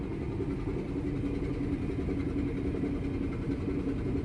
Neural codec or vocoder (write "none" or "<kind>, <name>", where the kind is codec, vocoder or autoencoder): none